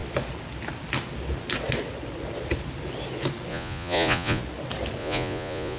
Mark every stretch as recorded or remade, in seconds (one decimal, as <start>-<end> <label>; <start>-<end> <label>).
0.0-3.5 recorded; 3.5-4.4 remade; 4.4-5.0 recorded; 5.0-5.8 remade